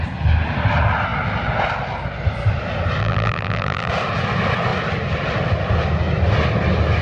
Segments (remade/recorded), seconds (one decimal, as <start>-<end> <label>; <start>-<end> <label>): 0.0-3.0 recorded; 3.0-3.9 remade; 3.9-7.0 recorded